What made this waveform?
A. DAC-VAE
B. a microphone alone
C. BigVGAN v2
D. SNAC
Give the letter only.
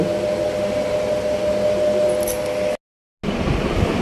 B